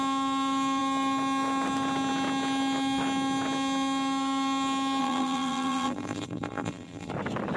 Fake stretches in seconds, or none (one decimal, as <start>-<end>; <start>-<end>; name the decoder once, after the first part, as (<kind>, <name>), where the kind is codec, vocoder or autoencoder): 5.0-7.1 (vocoder, BigVGAN v2)